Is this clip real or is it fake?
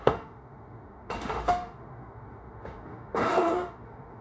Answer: fake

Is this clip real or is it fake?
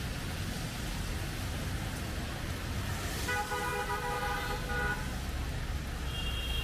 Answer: real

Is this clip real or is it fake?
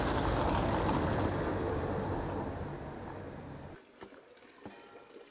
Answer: real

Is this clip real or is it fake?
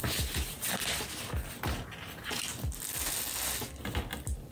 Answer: real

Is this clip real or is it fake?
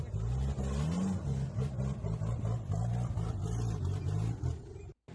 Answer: real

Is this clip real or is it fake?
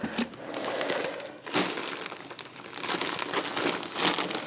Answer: real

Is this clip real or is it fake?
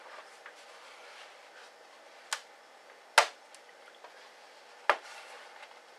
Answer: real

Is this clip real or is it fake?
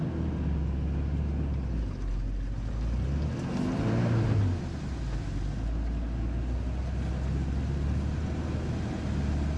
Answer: real